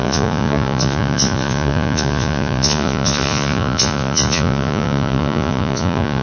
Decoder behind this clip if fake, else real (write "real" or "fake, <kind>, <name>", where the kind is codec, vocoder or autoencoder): fake, vocoder, Vocos